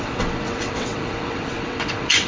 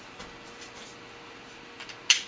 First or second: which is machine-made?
first